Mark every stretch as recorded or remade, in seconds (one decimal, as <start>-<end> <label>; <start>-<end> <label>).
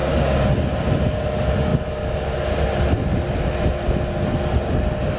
0.0-0.5 remade; 0.5-5.2 recorded